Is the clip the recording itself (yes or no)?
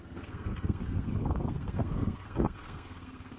no